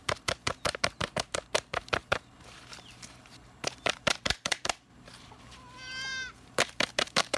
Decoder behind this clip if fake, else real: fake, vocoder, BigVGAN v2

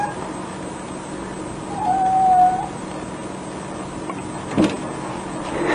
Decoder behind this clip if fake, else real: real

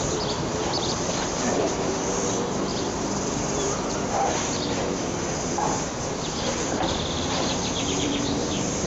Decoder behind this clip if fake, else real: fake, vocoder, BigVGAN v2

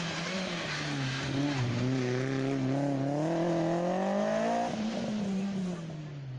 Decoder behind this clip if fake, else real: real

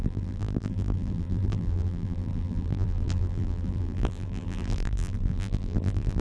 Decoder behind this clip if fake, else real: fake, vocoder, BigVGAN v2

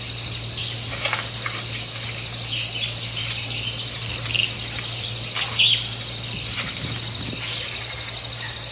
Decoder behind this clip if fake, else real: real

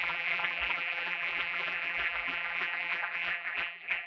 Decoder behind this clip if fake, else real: fake, vocoder, BigVGAN v2